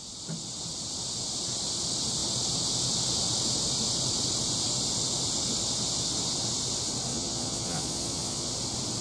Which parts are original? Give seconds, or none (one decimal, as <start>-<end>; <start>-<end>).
0.0-7.1; 8.5-9.0